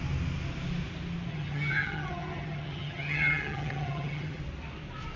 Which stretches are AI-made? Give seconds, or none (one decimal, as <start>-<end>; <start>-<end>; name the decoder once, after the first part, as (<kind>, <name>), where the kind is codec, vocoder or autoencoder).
1.3-4.4 (vocoder, HiFi-GAN)